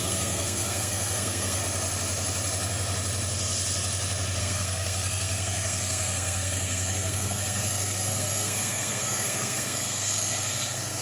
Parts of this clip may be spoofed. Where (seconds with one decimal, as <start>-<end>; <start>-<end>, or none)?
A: 0.0-1.6; 4.4-11.0